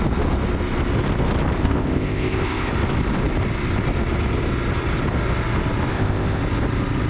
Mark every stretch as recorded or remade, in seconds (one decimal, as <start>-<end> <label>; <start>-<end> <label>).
0.0-1.6 recorded; 1.6-2.7 remade; 2.7-5.9 recorded; 5.9-6.4 remade; 6.4-7.1 recorded